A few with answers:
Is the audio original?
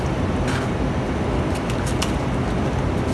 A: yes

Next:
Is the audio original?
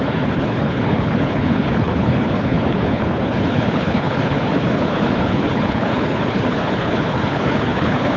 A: no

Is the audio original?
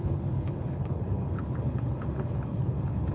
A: no